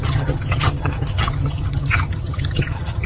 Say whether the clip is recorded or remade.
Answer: remade